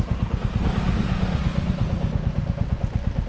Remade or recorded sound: recorded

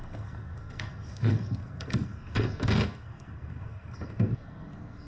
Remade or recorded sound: remade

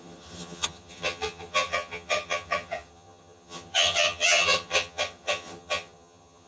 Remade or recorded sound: remade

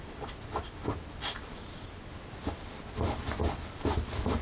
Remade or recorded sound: recorded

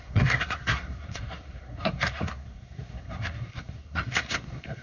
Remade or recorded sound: remade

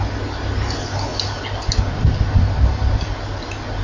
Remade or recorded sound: recorded